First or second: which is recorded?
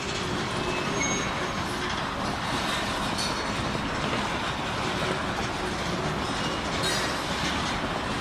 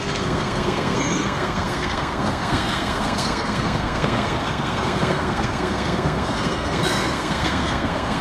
first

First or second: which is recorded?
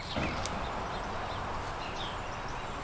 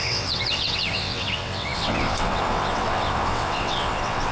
first